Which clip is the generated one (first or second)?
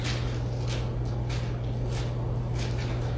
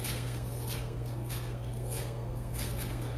second